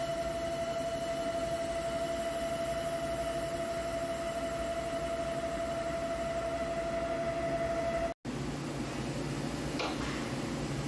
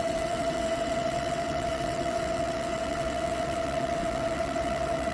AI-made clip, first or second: second